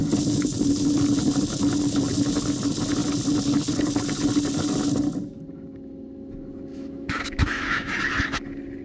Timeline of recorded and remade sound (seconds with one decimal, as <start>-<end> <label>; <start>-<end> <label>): 0.0-6.7 recorded; 6.7-7.9 remade; 7.9-8.8 recorded

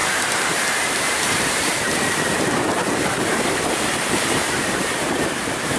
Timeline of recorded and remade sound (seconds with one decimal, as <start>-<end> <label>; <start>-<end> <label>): 0.0-5.8 remade

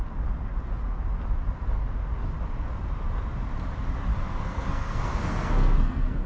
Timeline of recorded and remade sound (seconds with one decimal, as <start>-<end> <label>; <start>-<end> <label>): 0.0-4.1 recorded; 4.1-6.3 remade

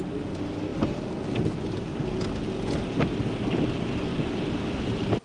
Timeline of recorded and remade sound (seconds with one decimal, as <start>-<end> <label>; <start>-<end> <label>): 0.0-5.2 recorded

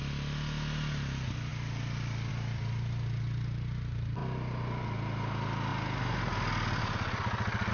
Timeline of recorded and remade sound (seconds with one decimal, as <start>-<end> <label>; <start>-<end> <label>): 0.0-7.7 recorded

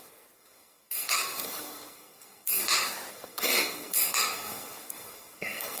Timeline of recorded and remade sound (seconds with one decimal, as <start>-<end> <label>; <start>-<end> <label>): 0.0-2.6 remade; 2.6-3.1 recorded; 3.1-5.8 remade

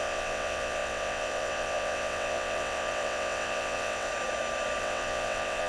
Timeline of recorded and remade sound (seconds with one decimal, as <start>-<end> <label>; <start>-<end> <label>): 0.0-4.1 remade; 4.1-4.8 recorded; 4.8-5.7 remade

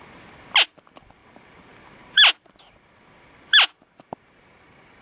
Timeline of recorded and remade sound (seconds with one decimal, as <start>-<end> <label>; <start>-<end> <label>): 0.0-5.0 recorded